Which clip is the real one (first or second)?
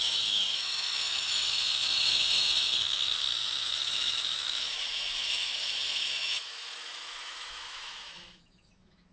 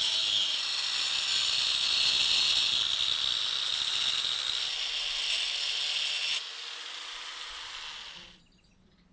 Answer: second